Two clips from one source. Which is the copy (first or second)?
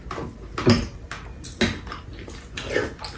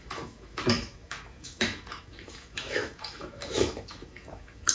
second